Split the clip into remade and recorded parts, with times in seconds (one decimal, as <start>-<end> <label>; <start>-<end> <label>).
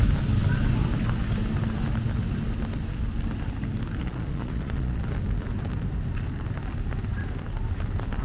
0.0-4.0 recorded; 4.0-5.0 remade; 5.0-8.2 recorded